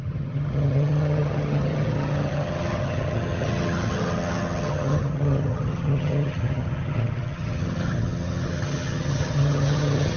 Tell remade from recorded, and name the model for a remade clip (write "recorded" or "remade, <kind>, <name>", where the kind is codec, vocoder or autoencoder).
remade, vocoder, HiFi-GAN